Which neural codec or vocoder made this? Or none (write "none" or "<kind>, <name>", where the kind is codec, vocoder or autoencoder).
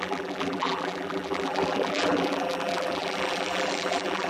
vocoder, BigVGAN v2